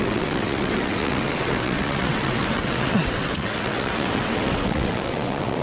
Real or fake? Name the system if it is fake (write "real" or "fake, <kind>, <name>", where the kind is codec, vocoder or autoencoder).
fake, vocoder, WaveNeXt